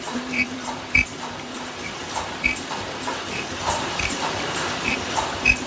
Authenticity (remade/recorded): remade